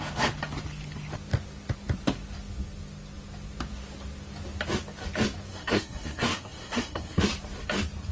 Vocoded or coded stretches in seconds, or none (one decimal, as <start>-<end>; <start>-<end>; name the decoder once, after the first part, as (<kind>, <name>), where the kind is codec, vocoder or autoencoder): 5.5-7.2 (codec, SNAC)